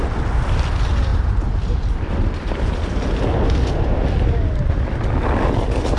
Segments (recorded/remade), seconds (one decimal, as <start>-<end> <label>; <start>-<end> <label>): 0.0-1.1 recorded; 1.1-4.7 remade; 4.7-6.0 recorded

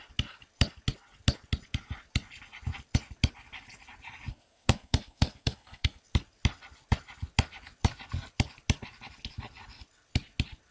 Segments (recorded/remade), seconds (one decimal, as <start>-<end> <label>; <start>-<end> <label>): 0.0-4.3 recorded; 4.3-6.0 remade; 6.0-10.7 recorded

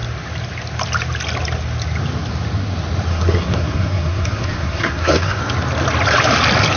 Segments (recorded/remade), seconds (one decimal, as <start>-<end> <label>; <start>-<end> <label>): 0.0-3.1 recorded; 3.1-5.4 remade; 5.4-6.8 recorded

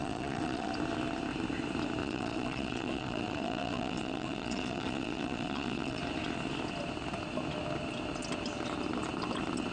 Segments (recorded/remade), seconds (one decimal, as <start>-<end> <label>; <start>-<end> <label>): 0.0-0.7 remade; 0.7-2.0 recorded; 2.0-6.0 remade; 6.0-9.7 recorded

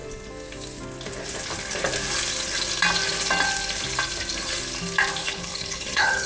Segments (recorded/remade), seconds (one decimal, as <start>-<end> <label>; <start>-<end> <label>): 0.0-5.2 recorded; 5.2-6.3 remade

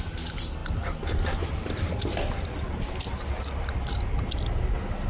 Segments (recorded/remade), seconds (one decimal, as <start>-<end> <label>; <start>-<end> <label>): 0.0-5.1 recorded

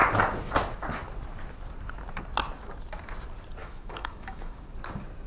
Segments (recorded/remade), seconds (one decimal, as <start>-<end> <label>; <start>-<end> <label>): 0.0-3.6 recorded; 3.6-4.6 remade; 4.6-5.3 recorded

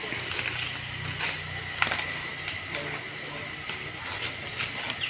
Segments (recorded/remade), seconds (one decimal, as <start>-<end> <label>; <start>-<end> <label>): 0.0-5.1 recorded